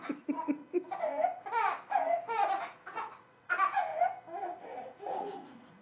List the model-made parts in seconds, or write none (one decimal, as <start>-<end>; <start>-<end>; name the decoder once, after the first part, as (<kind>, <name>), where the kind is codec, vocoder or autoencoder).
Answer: 0.0-0.6 (vocoder, Vocos); 2.6-3.9; 4.4-5.8

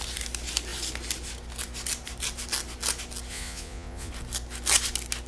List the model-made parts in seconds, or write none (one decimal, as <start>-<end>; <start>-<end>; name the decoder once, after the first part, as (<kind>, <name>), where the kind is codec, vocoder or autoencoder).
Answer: 3.3-4.1 (vocoder, Vocos)

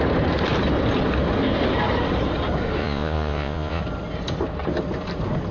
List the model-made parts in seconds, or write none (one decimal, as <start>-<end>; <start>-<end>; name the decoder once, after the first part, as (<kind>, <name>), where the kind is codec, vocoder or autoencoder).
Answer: 2.8-3.8 (vocoder, Vocos)

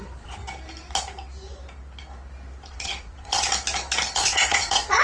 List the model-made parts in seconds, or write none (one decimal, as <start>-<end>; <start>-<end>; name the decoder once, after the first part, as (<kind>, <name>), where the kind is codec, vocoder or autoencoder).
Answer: 0.0-0.4 (vocoder, Vocos); 2.7-3.5; 4.1-5.0